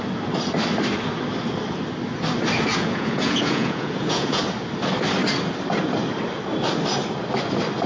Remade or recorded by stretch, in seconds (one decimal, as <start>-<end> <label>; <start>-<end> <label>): 0.0-2.7 recorded; 2.7-4.4 remade; 4.4-7.9 recorded